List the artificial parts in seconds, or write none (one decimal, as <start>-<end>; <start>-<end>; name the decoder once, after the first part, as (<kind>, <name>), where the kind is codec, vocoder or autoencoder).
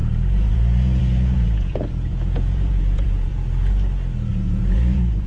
0.0-3.3 (vocoder, Vocos); 4.3-5.3